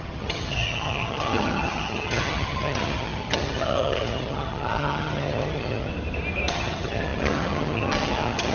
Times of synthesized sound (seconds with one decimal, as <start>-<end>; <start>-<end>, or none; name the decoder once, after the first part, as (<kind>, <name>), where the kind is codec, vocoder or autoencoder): 0.0-5.9 (vocoder, HiFi-GAN); 6.5-8.5